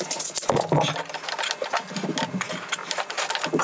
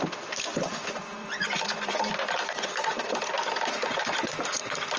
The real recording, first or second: first